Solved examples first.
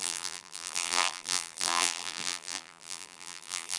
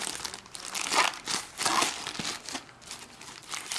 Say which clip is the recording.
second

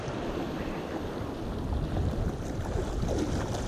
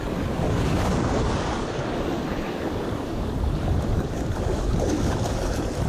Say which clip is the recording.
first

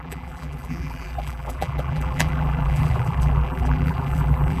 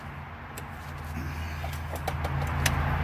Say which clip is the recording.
second